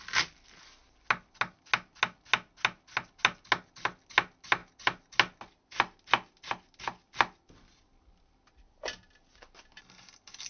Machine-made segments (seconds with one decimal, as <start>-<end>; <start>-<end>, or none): none